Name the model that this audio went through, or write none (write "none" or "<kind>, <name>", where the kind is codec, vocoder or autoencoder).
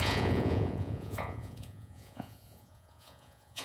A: vocoder, Vocos